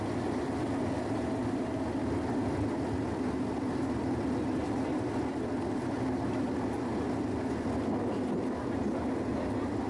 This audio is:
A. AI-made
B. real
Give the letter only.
B